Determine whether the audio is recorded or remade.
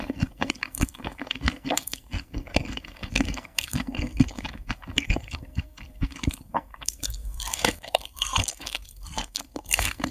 remade